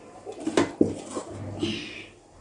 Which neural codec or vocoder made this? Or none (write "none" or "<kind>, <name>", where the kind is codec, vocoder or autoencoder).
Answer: none